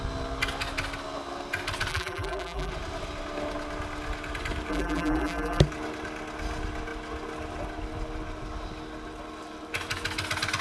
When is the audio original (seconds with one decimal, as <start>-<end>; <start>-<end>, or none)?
0.0-1.9; 2.7-4.7; 5.6-10.6